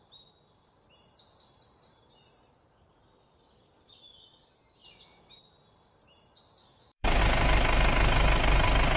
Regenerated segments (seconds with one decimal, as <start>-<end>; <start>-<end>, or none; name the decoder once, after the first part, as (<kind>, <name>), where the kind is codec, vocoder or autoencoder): 6.6-7.2 (autoencoder, DAC-VAE)